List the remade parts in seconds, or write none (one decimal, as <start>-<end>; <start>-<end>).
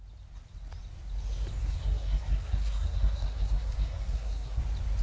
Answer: 1.6-4.6